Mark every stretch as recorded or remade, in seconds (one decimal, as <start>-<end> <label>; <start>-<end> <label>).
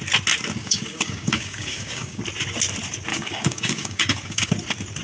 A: 0.0-0.6 recorded; 0.6-2.2 remade; 2.2-3.1 recorded; 3.1-4.5 remade; 4.5-5.0 recorded